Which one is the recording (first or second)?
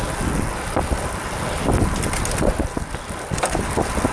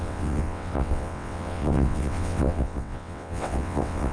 first